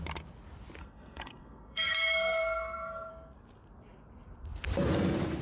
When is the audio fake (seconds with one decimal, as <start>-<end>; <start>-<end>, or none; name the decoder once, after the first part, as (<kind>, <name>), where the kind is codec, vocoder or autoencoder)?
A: 0.8-3.1 (codec, SNAC)